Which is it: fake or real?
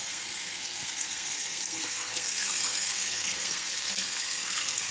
fake